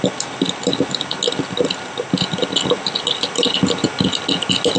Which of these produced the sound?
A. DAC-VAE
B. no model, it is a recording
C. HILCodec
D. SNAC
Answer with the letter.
B